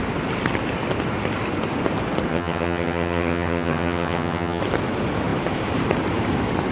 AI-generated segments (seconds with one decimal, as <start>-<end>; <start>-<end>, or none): 2.3-4.6